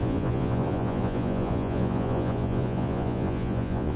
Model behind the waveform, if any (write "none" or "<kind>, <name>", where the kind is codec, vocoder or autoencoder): vocoder, Vocos